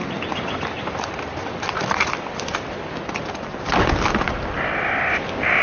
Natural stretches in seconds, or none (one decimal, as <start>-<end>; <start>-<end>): 3.4-5.6